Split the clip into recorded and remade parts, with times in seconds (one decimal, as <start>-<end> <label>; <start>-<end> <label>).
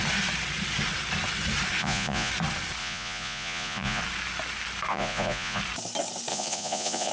0.0-1.8 recorded; 1.8-2.3 remade; 2.3-2.8 recorded; 2.8-4.0 remade; 4.0-4.9 recorded; 4.9-5.6 remade; 5.6-6.3 recorded; 6.3-7.1 remade